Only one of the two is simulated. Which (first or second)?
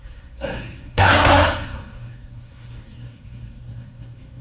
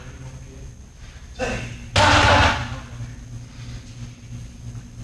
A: first